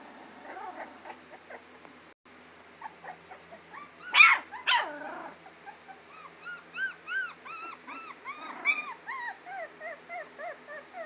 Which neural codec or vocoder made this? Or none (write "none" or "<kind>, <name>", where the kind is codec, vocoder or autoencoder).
none